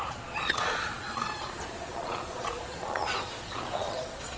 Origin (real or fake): fake